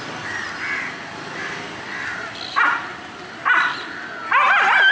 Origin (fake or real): real